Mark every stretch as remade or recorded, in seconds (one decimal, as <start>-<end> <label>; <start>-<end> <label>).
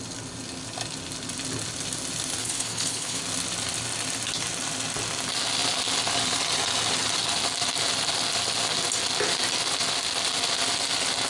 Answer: 0.0-2.4 recorded; 2.4-3.2 remade; 3.2-11.3 recorded